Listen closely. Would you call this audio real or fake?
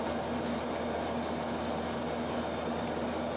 real